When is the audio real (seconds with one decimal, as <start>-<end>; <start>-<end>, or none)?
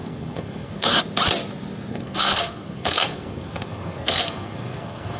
1.0-1.9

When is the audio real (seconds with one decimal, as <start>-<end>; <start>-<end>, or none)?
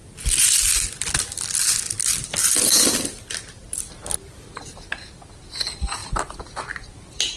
1.1-1.6; 4.5-6.0; 6.9-7.4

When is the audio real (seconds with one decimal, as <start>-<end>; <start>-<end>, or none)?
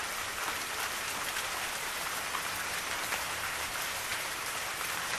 none